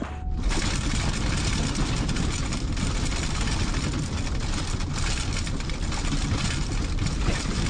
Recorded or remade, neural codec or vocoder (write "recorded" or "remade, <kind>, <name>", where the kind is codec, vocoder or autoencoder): recorded